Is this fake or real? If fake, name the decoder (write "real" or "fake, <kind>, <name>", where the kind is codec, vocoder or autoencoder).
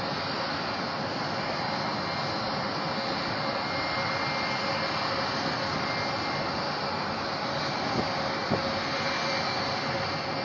real